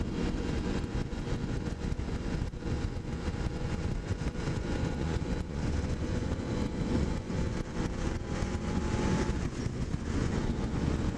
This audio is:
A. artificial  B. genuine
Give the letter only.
A